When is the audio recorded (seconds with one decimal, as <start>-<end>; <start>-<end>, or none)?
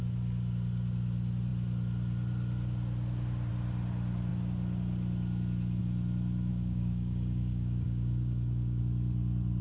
0.0-6.5; 8.8-9.6